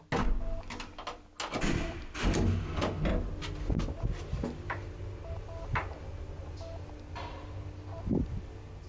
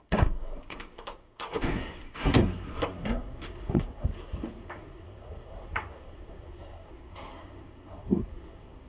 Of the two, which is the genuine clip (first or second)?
first